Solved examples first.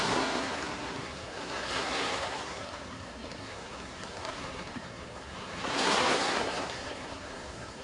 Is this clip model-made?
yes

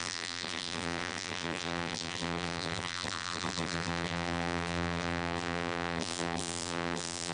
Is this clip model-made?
yes